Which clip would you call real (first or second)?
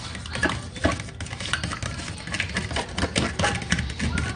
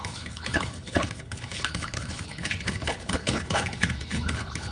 first